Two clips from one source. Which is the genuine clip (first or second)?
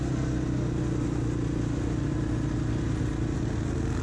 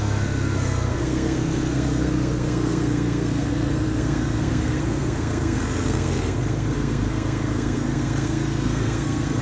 first